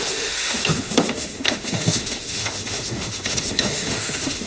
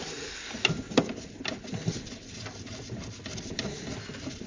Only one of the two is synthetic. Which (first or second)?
first